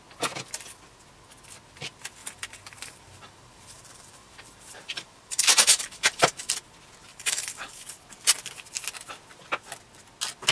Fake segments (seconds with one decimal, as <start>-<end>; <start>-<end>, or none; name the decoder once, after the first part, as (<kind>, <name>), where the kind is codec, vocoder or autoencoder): 2.2-6.5 (vocoder, BigVGAN v2); 7.1-8.0